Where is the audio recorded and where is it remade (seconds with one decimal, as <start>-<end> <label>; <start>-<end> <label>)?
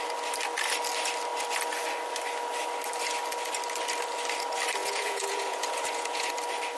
0.0-4.8 recorded; 4.8-6.3 remade; 6.3-6.8 recorded